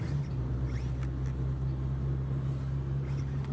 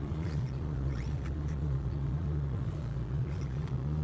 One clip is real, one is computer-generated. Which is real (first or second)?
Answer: first